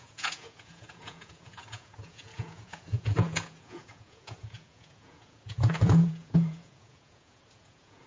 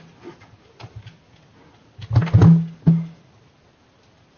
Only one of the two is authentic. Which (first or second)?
second